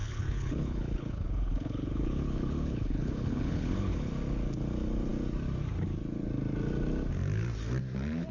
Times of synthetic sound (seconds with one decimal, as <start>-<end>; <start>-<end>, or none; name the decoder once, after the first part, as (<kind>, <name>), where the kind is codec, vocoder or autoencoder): 0.0-4.1 (codec, HILCodec)